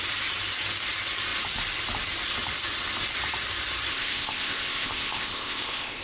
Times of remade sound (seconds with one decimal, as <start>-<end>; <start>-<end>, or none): 3.9-6.0